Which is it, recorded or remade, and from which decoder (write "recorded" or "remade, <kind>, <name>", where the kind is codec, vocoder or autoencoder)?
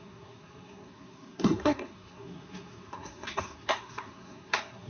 remade, codec, SNAC